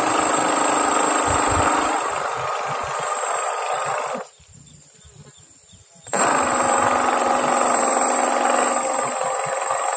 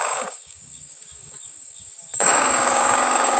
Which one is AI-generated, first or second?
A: second